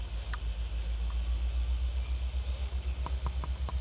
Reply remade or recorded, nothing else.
recorded